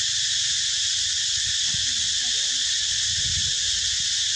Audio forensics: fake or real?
real